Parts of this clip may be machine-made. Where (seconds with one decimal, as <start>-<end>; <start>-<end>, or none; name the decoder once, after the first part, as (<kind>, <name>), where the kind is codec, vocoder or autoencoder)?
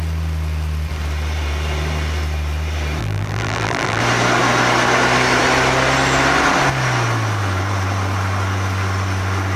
3.0-4.0 (vocoder, BigVGAN v2)